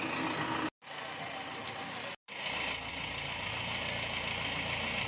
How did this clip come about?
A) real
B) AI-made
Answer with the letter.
A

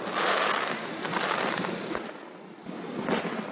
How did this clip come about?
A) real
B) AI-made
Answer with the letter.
A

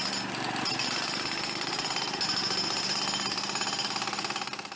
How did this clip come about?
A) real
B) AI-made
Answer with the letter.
A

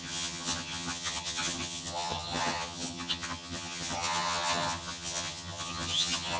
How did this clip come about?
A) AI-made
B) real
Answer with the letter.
A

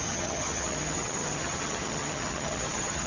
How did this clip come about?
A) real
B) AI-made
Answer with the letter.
B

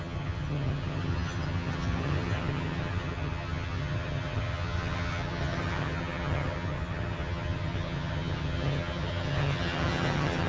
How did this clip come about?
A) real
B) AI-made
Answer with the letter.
B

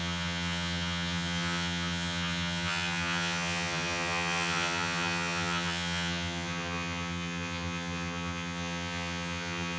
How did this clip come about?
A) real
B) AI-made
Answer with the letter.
B